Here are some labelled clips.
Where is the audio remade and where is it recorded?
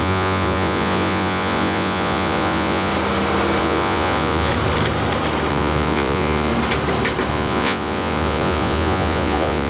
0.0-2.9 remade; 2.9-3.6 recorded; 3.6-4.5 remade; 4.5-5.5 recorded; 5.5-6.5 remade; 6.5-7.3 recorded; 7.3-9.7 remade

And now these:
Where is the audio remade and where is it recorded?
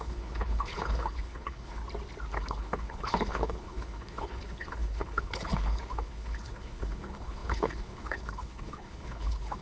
0.0-1.8 remade; 1.8-2.3 recorded; 2.3-9.6 remade